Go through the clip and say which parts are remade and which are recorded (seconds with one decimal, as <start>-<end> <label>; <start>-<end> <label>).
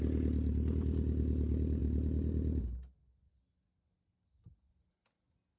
0.0-5.6 recorded